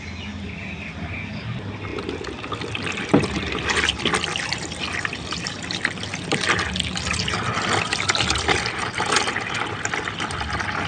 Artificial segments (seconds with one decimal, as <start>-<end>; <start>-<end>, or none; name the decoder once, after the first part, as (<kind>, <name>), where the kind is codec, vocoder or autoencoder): none